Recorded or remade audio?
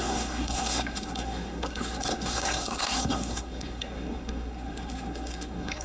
remade